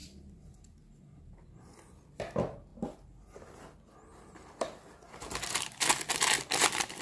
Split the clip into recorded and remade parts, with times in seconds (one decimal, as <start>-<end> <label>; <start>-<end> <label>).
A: 0.0-7.0 recorded